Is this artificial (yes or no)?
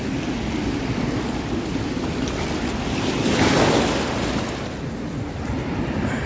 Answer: no